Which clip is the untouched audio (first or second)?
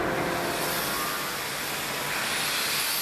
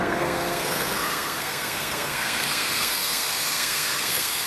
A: first